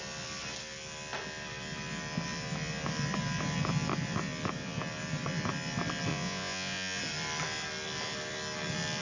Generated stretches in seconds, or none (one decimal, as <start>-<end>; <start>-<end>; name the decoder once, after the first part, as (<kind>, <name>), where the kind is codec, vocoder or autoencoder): 6.1-7.0 (vocoder, Vocos)